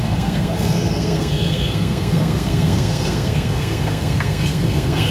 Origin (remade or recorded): remade